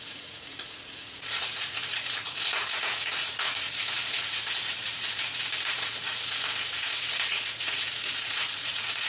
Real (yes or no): no